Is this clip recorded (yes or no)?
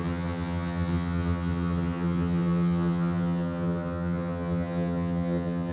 no